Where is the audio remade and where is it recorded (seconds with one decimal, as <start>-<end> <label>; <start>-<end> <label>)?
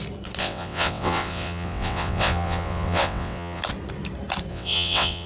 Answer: 0.0-0.4 recorded; 0.4-3.6 remade; 3.6-4.5 recorded; 4.5-5.3 remade